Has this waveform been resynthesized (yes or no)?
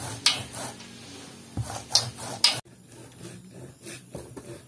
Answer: no